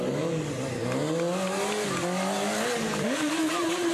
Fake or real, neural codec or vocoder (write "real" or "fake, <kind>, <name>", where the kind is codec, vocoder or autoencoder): real